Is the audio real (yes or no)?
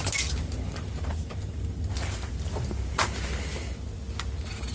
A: yes